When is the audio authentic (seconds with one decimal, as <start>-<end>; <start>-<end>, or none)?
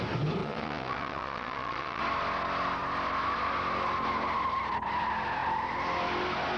0.0-0.4; 2.0-6.6